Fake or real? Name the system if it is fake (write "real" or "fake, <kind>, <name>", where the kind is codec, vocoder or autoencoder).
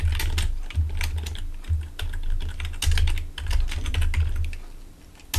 real